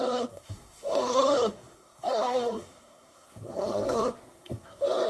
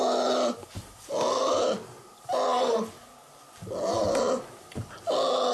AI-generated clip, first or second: first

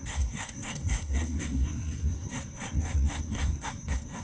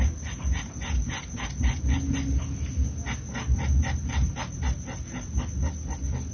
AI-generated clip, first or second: first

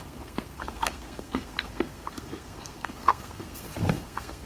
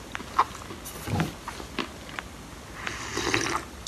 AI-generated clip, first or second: first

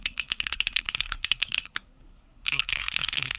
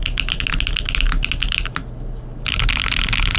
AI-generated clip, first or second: first